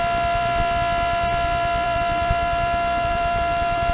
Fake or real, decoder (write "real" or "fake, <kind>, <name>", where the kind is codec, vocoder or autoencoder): fake, vocoder, BigVGAN v2